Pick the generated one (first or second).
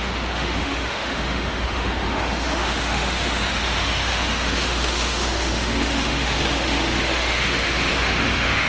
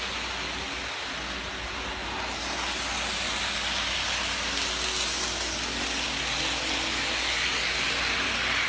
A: first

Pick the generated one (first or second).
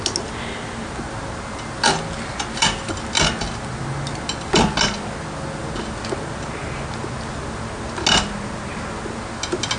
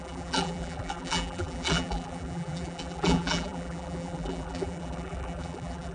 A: second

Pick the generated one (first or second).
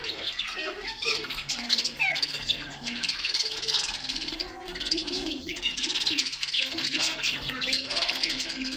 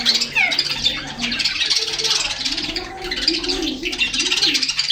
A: first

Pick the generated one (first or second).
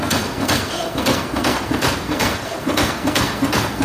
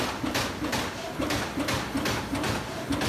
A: first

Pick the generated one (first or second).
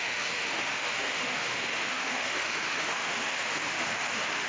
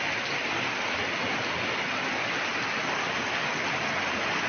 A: first